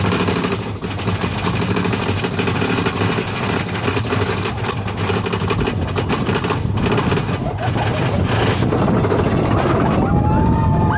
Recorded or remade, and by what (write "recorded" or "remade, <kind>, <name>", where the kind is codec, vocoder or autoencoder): recorded